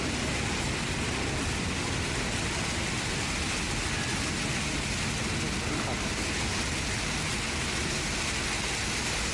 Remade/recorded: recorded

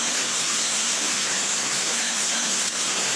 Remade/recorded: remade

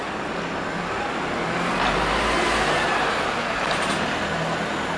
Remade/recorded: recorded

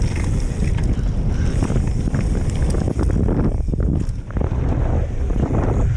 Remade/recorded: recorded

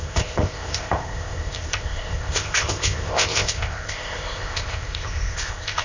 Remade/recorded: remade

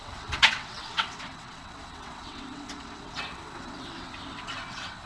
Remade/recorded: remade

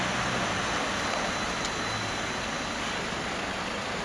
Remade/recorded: recorded